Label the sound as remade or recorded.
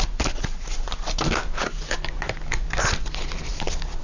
recorded